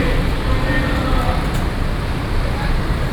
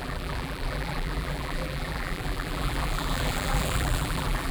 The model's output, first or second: second